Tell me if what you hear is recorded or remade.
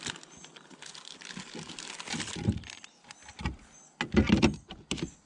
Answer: recorded